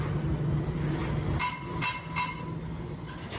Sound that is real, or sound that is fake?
real